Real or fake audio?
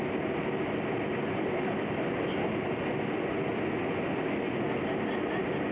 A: real